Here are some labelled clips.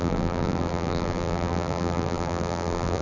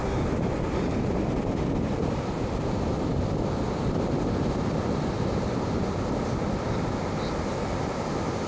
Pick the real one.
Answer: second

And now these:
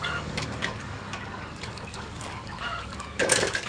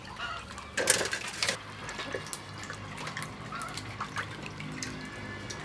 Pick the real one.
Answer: second